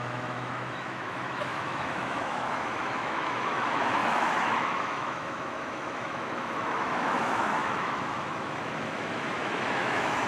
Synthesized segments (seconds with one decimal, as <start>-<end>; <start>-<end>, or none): 0.0-10.3

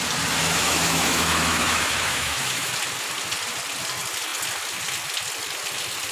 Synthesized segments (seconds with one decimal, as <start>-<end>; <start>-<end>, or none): 0.4-2.7

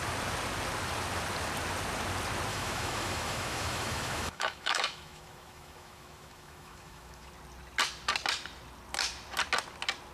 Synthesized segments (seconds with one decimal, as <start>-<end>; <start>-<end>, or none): 2.5-7.3

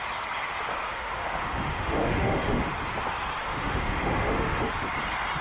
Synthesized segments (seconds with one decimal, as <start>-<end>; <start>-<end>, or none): 0.7-2.7; 3.4-4.7

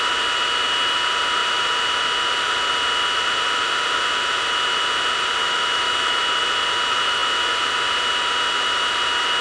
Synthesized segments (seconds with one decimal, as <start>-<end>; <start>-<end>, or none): 5.4-6.2

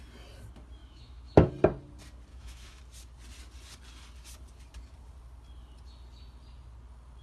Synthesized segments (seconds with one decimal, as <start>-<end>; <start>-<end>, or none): 0.8-1.5; 2.3-2.8

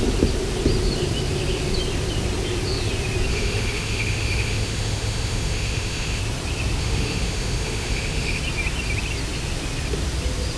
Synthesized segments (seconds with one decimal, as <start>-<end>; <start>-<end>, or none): 3.3-6.2; 6.8-8.4

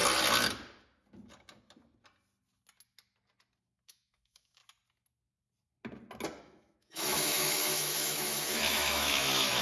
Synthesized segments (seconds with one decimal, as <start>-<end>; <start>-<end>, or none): 3.6-4.6; 6.4-9.6